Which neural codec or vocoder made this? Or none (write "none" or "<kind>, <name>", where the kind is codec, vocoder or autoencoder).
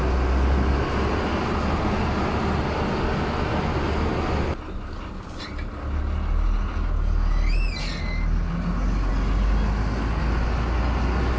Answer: none